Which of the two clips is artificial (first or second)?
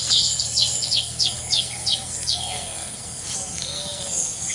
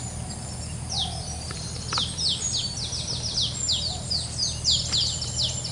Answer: first